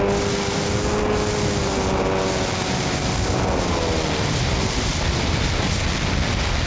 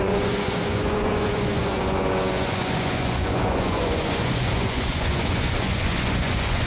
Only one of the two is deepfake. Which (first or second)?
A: second